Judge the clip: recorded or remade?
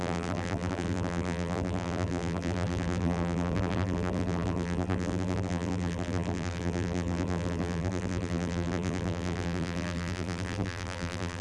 remade